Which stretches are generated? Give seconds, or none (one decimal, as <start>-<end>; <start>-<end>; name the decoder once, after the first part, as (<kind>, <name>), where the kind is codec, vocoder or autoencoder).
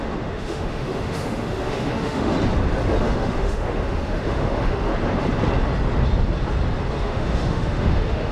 0.0-2.3 (autoencoder, DAC-VAE); 3.0-4.9; 7.0-8.3